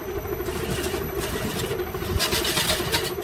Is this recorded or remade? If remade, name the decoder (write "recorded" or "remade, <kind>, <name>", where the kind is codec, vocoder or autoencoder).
remade, vocoder, BigVGAN v2